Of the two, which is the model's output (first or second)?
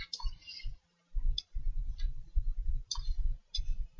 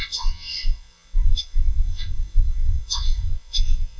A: second